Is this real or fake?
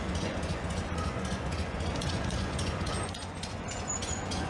fake